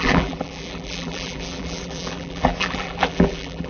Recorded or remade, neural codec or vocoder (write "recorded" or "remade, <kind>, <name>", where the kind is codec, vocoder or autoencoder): remade, vocoder, BigVGAN v2